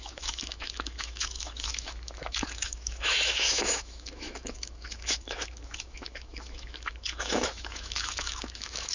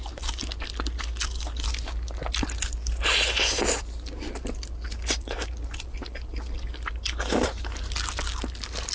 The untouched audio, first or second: second